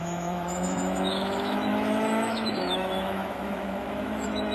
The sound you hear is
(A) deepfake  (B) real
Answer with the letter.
A